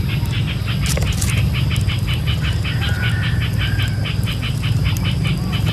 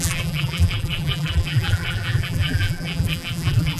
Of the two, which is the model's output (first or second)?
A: second